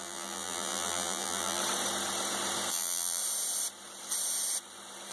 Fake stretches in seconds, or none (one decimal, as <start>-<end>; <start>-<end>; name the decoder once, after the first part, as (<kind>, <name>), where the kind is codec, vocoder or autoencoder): 0.0-1.6 (vocoder, BigVGAN v2); 2.7-3.2